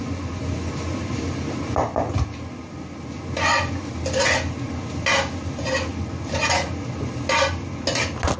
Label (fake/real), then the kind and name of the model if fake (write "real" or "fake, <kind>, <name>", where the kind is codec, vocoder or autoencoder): real